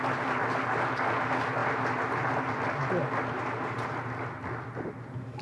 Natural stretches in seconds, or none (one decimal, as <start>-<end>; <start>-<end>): 0.0-5.4